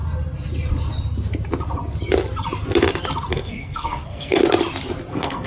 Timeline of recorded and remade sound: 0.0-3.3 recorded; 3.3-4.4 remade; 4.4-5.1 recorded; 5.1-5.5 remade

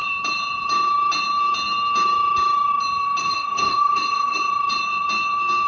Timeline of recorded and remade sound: 0.0-3.2 recorded; 3.2-4.4 remade; 4.4-5.7 recorded

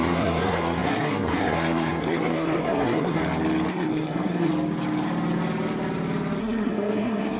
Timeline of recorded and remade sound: 0.0-3.2 remade; 3.2-3.7 recorded; 3.7-4.5 remade; 4.5-6.4 recorded; 6.4-7.4 remade

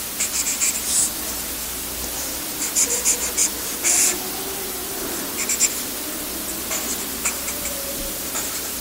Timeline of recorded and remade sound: 0.0-3.4 remade; 3.4-7.1 recorded; 7.1-8.8 remade

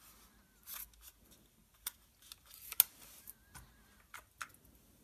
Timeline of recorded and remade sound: 0.0-5.0 recorded

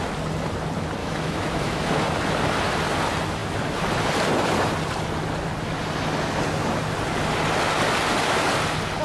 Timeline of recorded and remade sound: 0.0-1.0 recorded; 1.0-1.9 remade; 1.9-9.0 recorded

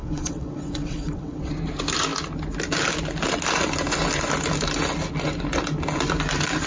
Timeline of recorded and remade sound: 0.0-1.5 remade; 1.5-6.7 recorded